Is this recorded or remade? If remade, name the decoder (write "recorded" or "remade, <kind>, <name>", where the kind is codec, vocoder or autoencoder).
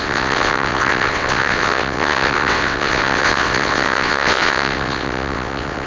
remade, vocoder, WaveNeXt